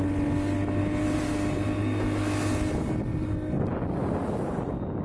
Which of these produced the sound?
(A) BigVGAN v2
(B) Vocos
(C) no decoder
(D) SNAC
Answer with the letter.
C